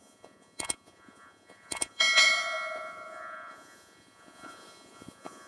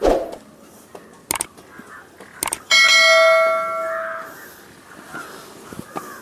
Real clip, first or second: second